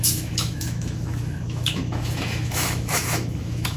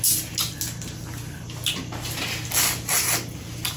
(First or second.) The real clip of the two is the second